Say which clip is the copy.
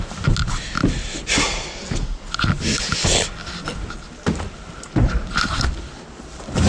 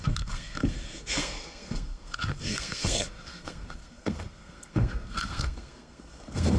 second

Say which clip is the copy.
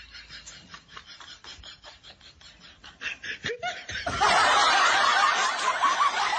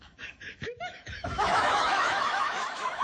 second